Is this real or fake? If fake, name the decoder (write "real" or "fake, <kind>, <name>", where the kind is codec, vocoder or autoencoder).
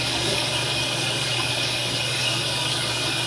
fake, codec, DAC